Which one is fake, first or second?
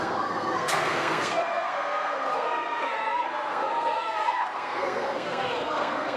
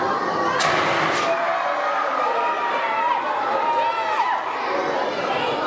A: first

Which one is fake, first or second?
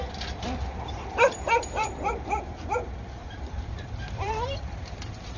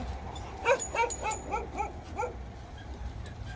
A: first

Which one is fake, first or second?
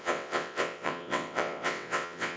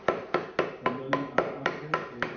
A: first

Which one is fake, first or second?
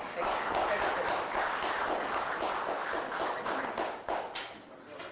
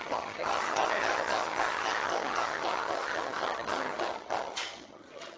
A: second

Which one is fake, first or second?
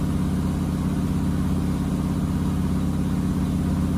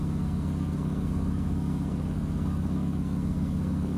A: second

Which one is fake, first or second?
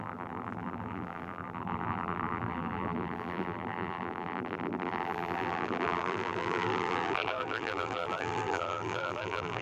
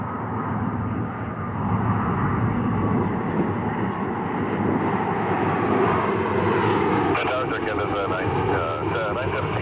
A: first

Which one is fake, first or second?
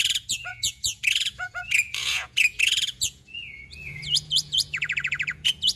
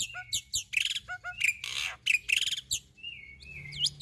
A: first